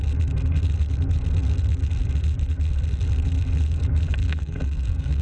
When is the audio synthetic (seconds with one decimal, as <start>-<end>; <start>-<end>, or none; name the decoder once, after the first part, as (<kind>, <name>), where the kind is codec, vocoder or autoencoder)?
4.2-5.2 (codec, SNAC)